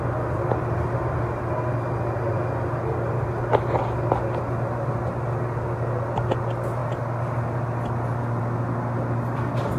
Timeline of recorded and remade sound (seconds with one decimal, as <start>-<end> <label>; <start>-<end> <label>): 0.0-9.8 recorded